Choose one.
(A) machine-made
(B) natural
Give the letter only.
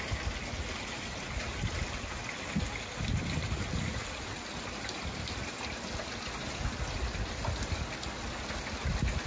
B